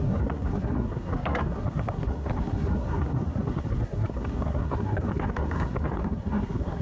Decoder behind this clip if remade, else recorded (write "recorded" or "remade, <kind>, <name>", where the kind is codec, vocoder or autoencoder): remade, codec, SNAC